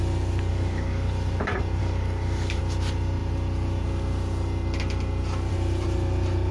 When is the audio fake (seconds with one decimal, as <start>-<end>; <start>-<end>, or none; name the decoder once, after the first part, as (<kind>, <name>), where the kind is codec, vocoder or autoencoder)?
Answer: 0.5-1.1 (codec, DAC); 1.8-2.6